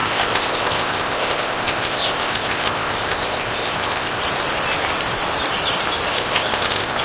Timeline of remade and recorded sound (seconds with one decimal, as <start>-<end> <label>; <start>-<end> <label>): 0.0-4.2 remade; 4.2-6.1 recorded; 6.1-7.0 remade

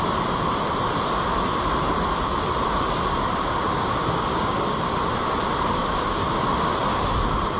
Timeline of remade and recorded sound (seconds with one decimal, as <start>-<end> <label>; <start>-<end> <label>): 0.0-4.3 recorded; 4.3-4.8 remade; 4.8-7.6 recorded

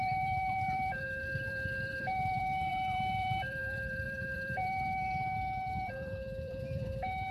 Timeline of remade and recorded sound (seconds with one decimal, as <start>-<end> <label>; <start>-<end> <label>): 0.0-7.3 remade

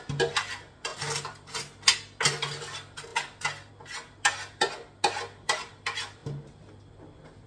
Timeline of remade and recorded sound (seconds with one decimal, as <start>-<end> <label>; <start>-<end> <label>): 0.0-0.9 recorded; 0.9-1.6 remade; 1.6-7.5 recorded

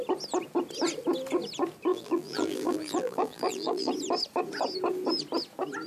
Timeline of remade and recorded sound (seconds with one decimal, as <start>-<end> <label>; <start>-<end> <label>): 0.0-1.9 recorded; 1.9-3.9 remade; 3.9-5.9 recorded

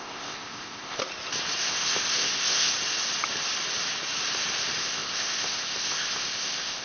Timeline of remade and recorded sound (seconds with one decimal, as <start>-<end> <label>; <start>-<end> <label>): 0.0-1.0 remade; 1.0-1.6 recorded; 1.6-2.7 remade; 2.7-4.8 recorded; 4.8-6.8 remade

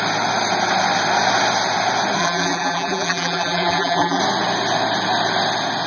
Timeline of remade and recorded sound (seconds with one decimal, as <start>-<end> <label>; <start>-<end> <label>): 0.0-2.2 recorded; 2.2-4.2 remade; 4.2-5.9 recorded